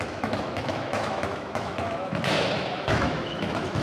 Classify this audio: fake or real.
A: fake